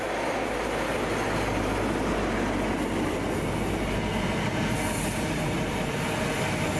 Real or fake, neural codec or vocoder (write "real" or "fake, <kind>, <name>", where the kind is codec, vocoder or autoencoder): real